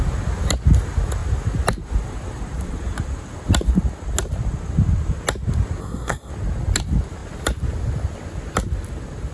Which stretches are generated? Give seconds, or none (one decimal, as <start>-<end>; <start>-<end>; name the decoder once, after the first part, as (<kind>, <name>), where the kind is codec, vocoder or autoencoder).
5.8-6.3 (codec, SNAC)